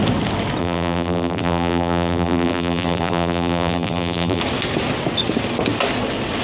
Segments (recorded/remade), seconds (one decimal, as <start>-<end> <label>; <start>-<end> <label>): 0.0-0.6 recorded; 0.6-4.4 remade; 4.4-6.4 recorded